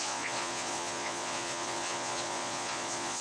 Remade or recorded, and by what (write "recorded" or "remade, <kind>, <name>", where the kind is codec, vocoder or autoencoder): remade, vocoder, Vocos